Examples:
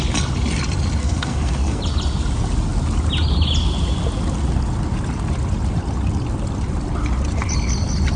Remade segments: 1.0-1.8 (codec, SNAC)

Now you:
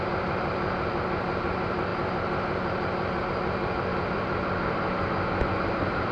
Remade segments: 3.9-5.6 (vocoder, BigVGAN v2)

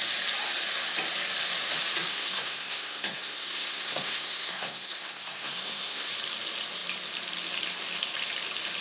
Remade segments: 2.1-6.1 (codec, SNAC)

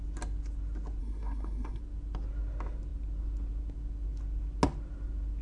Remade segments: 1.0-1.8 (codec, SNAC)

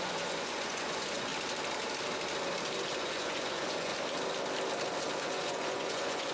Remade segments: 0.0-1.3 (vocoder, Vocos); 3.0-3.9; 5.2-6.3

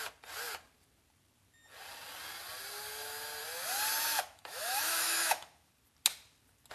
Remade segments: 4.0-5.7 (autoencoder, DAC-VAE)

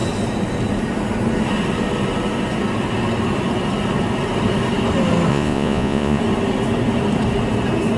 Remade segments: 5.3-6.2 (vocoder, Vocos)

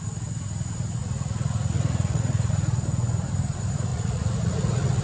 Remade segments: 1.0-2.5 (vocoder, Vocos); 3.9-5.0